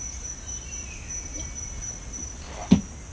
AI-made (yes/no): no